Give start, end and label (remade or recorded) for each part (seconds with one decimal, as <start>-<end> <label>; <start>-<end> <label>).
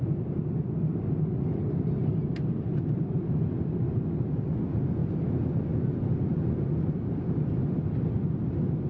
0.0-8.9 recorded